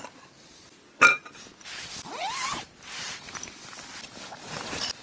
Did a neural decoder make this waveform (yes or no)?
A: no